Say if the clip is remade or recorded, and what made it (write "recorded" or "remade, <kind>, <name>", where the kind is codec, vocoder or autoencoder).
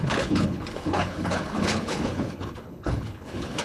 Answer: remade, codec, HILCodec